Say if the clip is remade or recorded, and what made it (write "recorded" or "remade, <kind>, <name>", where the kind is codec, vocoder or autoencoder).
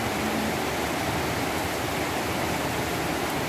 recorded